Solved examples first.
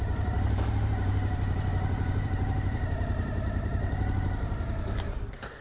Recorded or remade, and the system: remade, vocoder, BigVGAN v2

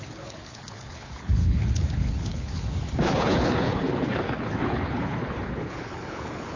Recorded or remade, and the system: remade, codec, HILCodec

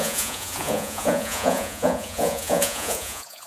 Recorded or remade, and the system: remade, vocoder, Vocos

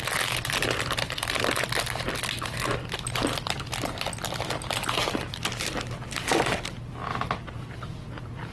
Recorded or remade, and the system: recorded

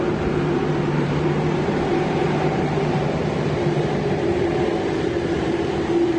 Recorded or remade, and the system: remade, vocoder, BigVGAN v2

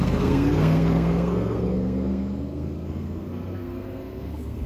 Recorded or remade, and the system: remade, codec, SNAC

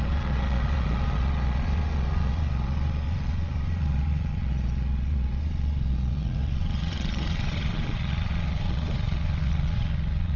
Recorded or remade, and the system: remade, vocoder, Vocos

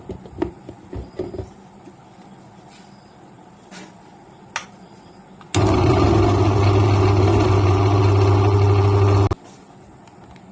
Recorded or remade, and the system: recorded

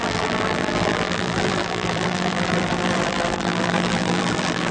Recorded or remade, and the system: remade, vocoder, BigVGAN v2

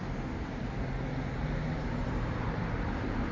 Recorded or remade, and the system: recorded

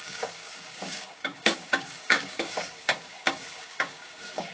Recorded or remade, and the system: remade, codec, DAC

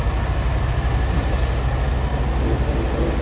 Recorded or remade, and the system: recorded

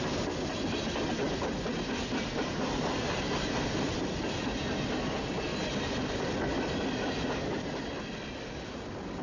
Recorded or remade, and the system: recorded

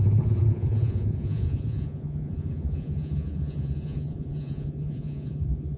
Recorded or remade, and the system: remade, vocoder, Vocos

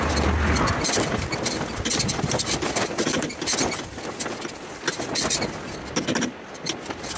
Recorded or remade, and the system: recorded